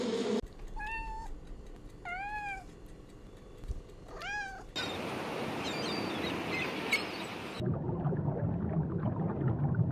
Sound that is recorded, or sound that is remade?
recorded